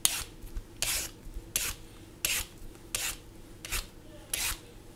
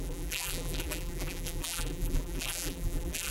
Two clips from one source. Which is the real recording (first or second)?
first